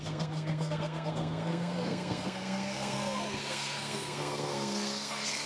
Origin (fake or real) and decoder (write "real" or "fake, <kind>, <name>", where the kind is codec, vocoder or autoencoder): fake, codec, SNAC